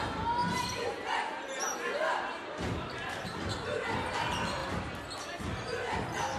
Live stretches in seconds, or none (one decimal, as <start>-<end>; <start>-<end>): 0.0-6.4